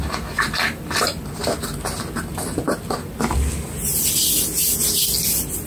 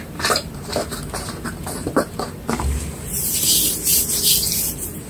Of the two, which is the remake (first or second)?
second